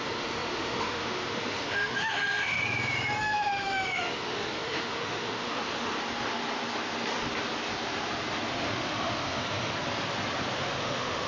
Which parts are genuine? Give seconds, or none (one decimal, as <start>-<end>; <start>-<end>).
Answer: 2.6-3.2; 5.9-8.5; 9.7-10.6

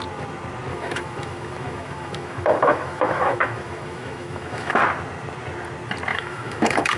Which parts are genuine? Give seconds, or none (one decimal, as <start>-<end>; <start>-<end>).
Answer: 0.0-0.7; 4.8-6.1